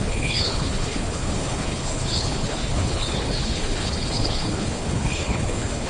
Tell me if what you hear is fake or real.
fake